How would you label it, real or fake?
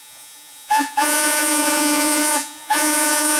fake